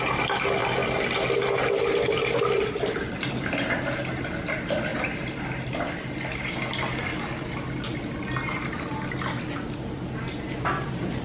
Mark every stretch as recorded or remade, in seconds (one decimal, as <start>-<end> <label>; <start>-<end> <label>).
0.0-11.2 recorded

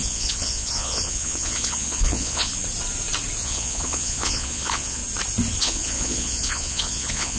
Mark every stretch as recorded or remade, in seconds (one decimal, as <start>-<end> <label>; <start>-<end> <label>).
0.0-2.5 remade; 2.5-3.4 recorded; 3.4-5.0 remade; 5.0-5.6 recorded; 5.6-7.4 remade

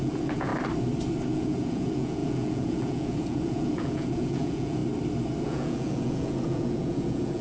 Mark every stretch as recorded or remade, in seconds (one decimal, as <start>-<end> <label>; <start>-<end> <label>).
0.0-0.5 remade; 0.5-1.3 recorded; 1.3-4.8 remade; 4.8-5.4 recorded; 5.4-7.4 remade

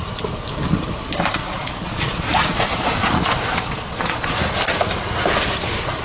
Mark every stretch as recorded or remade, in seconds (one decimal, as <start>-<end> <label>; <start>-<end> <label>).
0.0-1.4 recorded; 1.4-4.4 remade; 4.4-6.0 recorded

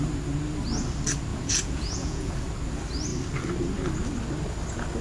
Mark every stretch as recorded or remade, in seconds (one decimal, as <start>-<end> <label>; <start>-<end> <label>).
0.0-1.3 recorded; 1.3-2.3 remade; 2.3-5.0 recorded

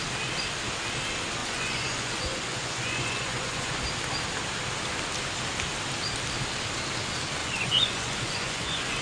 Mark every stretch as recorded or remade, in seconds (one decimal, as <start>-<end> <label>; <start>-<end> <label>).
0.0-1.4 recorded; 1.4-3.8 remade; 3.8-7.4 recorded; 7.4-9.0 remade